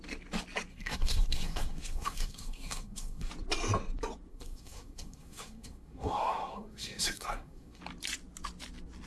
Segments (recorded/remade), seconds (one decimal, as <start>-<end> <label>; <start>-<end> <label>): 0.0-0.7 recorded; 0.7-3.3 remade; 3.3-4.3 recorded; 4.3-7.8 remade; 7.8-9.1 recorded